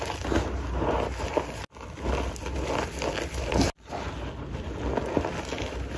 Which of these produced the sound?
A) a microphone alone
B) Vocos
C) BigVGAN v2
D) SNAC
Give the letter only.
A